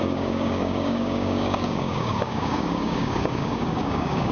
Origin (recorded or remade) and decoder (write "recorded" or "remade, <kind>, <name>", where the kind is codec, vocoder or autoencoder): remade, codec, DAC